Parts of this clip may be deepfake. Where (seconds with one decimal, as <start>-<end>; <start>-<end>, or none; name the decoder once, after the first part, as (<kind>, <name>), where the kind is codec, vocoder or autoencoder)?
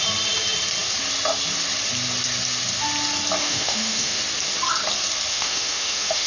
3.4-4.2 (autoencoder, DAC-VAE); 5.3-6.3